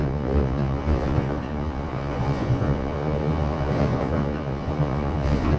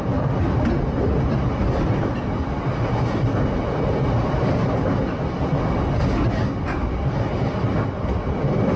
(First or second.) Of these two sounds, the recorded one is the second